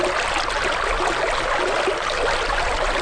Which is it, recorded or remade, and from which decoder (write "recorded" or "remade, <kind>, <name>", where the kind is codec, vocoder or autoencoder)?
recorded